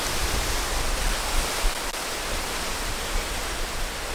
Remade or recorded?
recorded